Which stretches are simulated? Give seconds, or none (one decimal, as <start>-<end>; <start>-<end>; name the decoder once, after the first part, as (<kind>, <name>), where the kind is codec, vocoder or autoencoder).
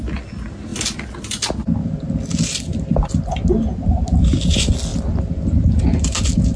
none